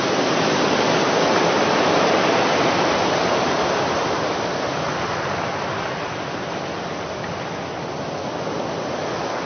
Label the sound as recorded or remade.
recorded